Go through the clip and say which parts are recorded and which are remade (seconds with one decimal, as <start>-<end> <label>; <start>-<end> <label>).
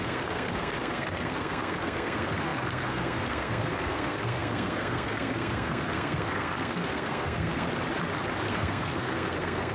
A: 0.0-7.7 remade; 7.7-8.5 recorded; 8.5-9.7 remade